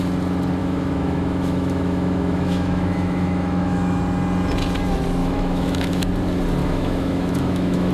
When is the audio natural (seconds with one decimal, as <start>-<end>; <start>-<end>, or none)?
0.0-0.6; 4.0-5.2; 6.1-6.6